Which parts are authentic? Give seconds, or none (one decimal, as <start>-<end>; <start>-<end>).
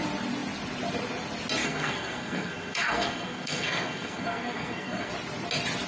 0.0-1.6; 5.1-5.9